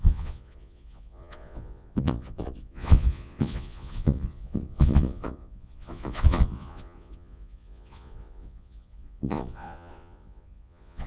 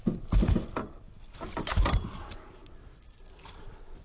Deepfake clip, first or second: first